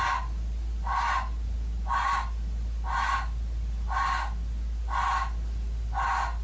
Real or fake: real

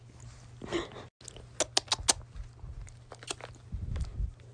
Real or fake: real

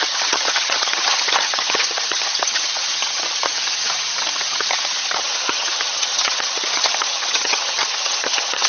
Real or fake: fake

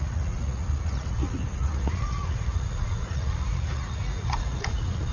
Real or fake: fake